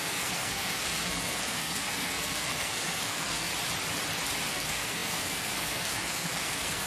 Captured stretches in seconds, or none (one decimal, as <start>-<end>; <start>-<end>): 3.5-4.5